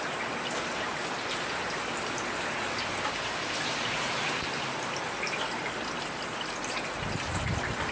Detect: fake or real real